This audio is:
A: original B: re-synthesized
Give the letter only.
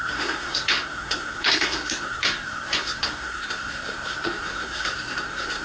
B